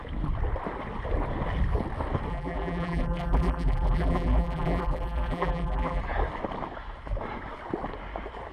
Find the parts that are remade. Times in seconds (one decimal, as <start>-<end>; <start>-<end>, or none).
2.3-6.0

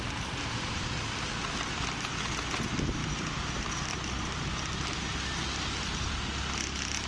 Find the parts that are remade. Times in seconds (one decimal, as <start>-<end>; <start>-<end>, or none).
3.0-3.7

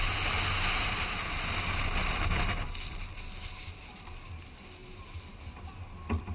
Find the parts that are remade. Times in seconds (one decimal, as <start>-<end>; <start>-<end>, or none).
4.8-5.4

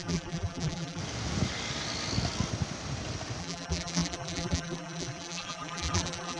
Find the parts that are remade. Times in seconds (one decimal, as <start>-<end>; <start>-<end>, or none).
0.0-1.0; 3.4-6.4

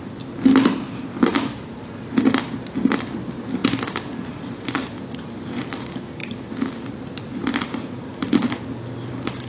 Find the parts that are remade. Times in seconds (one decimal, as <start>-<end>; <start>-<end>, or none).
6.2-6.7